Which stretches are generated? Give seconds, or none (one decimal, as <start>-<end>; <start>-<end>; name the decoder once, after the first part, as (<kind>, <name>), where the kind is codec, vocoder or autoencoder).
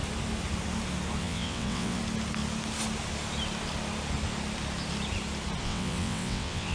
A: 1.2-2.0 (vocoder, WaveNeXt); 5.6-6.7